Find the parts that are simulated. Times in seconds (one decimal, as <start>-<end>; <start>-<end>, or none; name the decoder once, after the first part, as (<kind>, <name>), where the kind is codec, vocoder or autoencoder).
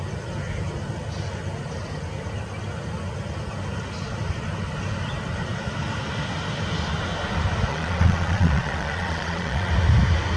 7.7-9.7 (vocoder, Vocos)